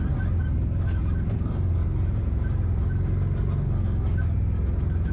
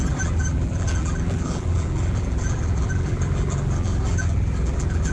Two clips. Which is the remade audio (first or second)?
second